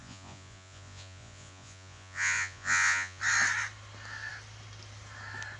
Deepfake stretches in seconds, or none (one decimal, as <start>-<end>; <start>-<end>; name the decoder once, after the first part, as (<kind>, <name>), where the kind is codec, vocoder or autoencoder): 0.0-3.2 (vocoder, Vocos)